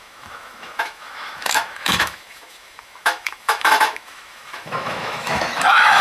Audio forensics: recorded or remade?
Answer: remade